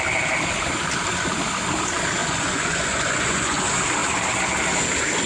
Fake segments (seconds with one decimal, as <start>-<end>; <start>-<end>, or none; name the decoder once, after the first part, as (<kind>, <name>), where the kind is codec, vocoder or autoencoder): 2.2-3.6 (vocoder, Vocos)